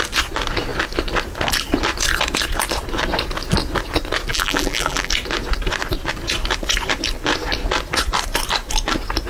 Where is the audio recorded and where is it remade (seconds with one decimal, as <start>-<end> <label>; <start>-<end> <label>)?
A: 0.0-4.3 recorded; 4.3-5.1 remade; 5.1-9.3 recorded